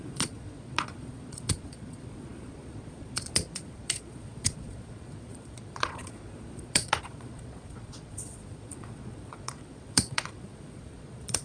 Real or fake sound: fake